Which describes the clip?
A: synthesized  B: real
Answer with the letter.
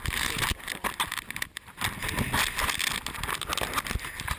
B